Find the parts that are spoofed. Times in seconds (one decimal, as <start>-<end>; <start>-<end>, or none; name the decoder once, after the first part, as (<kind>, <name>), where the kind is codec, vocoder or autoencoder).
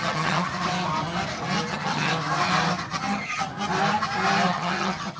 0.0-0.5 (vocoder, HiFi-GAN); 1.7-2.1; 2.9-3.5; 4.5-5.2